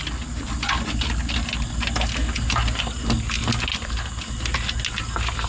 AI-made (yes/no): no